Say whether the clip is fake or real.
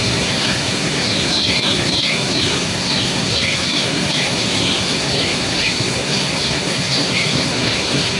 fake